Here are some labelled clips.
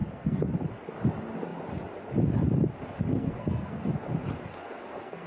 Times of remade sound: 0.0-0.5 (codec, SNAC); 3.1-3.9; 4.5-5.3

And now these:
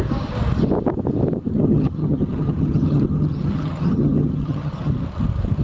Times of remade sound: 1.5-4.9 (vocoder, HiFi-GAN)